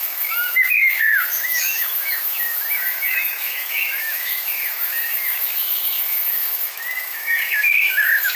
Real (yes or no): no